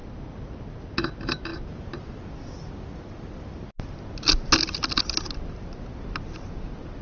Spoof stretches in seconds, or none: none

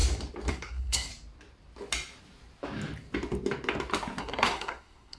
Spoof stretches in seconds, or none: 0.5-1.1; 4.2-5.2

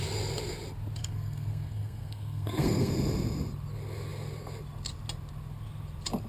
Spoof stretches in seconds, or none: 1.0-2.9

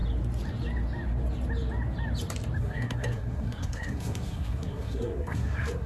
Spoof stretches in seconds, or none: 2.6-5.9